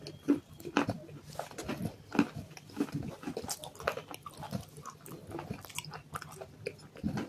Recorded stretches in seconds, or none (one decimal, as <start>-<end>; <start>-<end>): 0.0-7.3